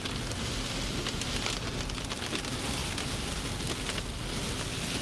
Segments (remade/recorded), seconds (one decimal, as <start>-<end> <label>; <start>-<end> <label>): 0.0-5.0 recorded